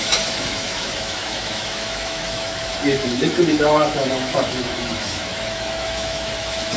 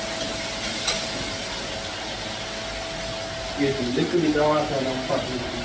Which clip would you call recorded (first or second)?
second